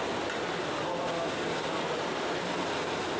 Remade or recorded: recorded